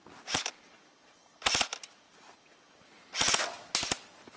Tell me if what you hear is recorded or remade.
recorded